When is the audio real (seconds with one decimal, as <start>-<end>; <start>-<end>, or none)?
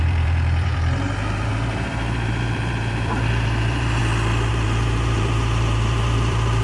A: 4.0-4.5